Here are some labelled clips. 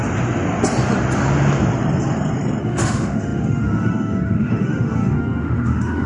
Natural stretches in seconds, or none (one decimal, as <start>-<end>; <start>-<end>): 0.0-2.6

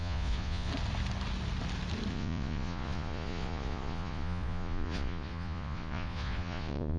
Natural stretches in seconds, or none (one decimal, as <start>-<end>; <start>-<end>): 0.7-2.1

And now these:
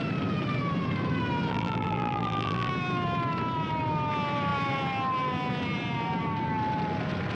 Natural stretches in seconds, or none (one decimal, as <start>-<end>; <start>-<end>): 0.0-1.5; 2.7-7.3

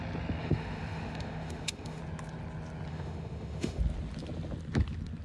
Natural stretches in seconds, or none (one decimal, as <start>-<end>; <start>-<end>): 0.0-0.4; 2.0-2.9; 3.8-5.2

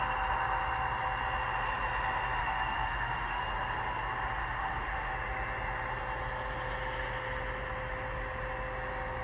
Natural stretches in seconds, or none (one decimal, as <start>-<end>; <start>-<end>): 0.0-2.4; 3.4-4.4; 5.1-9.2

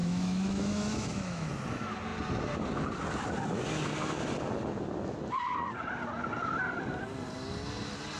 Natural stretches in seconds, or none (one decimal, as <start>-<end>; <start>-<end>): 1.5-8.2

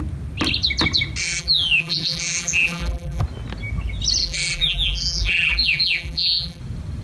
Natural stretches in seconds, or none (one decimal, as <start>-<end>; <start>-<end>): 0.0-1.2; 3.2-4.2; 6.6-7.0

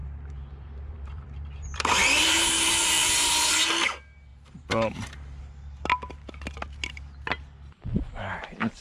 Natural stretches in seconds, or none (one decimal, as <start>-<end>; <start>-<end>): 3.5-4.3; 5.4-8.8